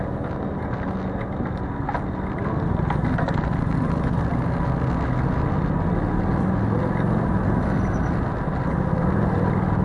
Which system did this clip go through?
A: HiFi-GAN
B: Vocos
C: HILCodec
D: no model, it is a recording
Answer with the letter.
D